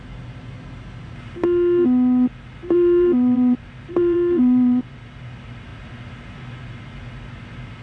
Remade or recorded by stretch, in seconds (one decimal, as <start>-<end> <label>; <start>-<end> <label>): 0.0-2.6 recorded; 2.6-4.9 remade; 4.9-7.8 recorded